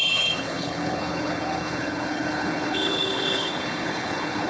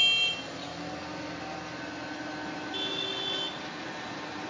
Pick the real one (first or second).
second